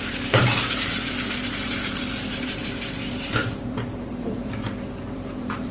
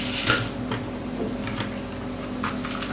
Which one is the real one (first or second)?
second